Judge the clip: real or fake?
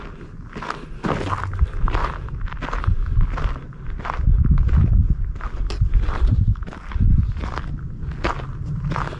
real